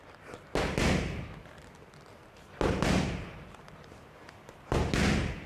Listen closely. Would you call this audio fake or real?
real